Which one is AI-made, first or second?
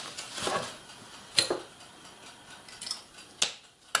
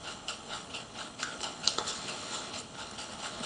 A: second